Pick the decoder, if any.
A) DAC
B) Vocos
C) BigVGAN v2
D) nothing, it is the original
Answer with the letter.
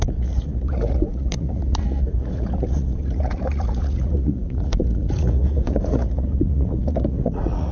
B